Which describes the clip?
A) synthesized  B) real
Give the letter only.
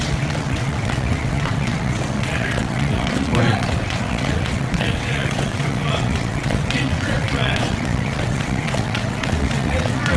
A